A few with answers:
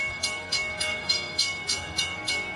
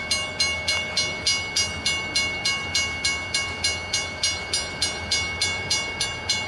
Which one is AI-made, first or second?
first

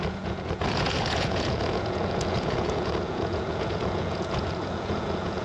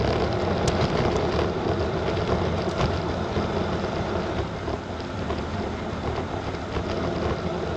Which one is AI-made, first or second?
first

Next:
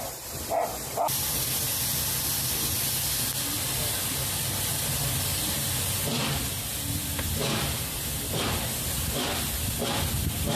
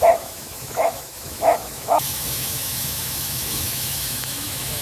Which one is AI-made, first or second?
second